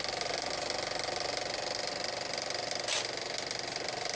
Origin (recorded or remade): recorded